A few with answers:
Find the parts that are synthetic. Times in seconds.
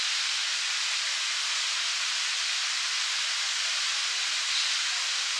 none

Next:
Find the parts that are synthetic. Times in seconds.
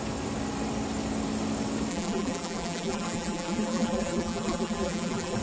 1.9-5.4 (vocoder, BigVGAN v2)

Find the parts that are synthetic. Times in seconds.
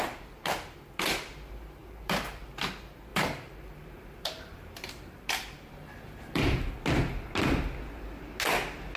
1.8-2.7 (vocoder, BigVGAN v2); 3.1-6.7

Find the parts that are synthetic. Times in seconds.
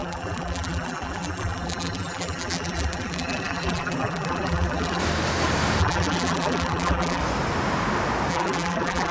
0.0-5.0 (vocoder, BigVGAN v2); 5.8-7.2; 8.3-9.1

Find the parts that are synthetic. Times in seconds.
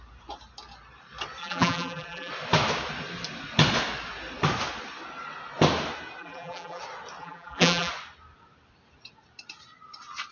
1.4-2.3 (vocoder, BigVGAN v2); 6.2-6.8; 7.2-7.9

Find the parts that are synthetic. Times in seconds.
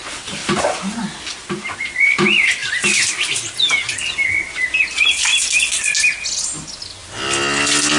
0.4-0.9 (vocoder, BigVGAN v2)